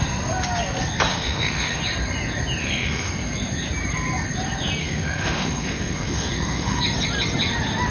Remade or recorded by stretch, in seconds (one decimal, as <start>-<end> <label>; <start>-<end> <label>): 0.0-1.1 recorded; 1.1-1.8 remade; 1.8-2.6 recorded; 2.6-3.1 remade; 3.1-4.8 recorded; 4.8-6.8 remade; 6.8-7.9 recorded